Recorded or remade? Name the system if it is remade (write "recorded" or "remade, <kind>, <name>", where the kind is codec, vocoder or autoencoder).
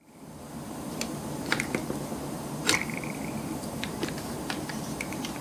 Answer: remade, vocoder, BigVGAN v2